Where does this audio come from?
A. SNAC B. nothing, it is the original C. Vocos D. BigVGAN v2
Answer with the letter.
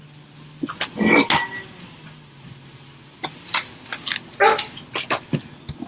B